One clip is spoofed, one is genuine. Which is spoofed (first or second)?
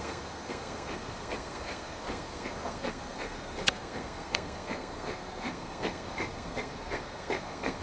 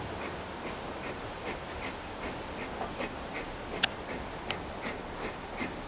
first